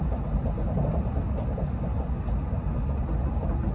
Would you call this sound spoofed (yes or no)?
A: no